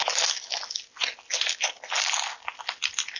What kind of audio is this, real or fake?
real